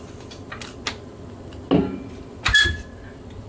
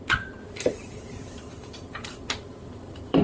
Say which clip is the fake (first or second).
second